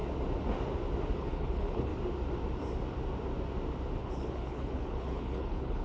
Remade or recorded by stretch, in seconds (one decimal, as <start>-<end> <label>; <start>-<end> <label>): 0.0-1.2 recorded; 1.2-1.9 remade; 1.9-4.0 recorded; 4.0-5.8 remade